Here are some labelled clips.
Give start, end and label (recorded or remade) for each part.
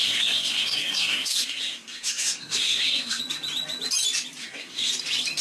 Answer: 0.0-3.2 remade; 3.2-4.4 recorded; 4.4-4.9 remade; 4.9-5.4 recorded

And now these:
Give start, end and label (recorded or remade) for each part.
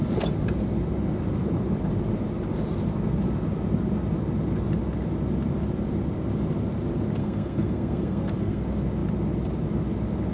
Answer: 0.0-7.2 recorded; 7.2-8.6 remade; 8.6-10.3 recorded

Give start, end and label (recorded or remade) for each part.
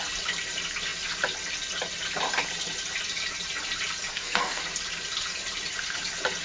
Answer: 0.0-4.1 recorded; 4.1-4.6 remade; 4.6-6.4 recorded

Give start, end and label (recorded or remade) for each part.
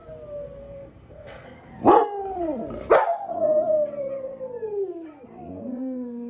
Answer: 0.0-0.6 recorded; 0.6-1.7 remade; 1.7-5.5 recorded; 5.5-6.3 remade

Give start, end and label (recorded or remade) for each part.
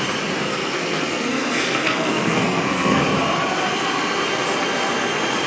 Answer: 0.0-0.5 recorded; 0.5-3.0 remade; 3.0-5.5 recorded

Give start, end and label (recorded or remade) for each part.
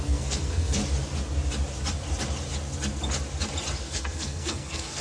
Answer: 0.0-0.8 remade; 0.8-3.8 recorded; 3.8-5.0 remade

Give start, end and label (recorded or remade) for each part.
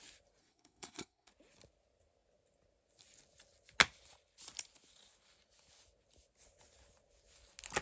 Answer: 0.0-0.4 recorded; 0.4-1.3 remade; 1.3-7.8 recorded